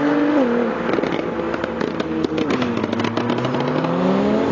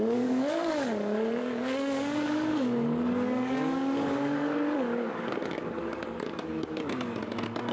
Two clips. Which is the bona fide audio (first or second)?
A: first